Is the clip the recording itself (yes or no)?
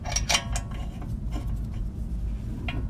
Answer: yes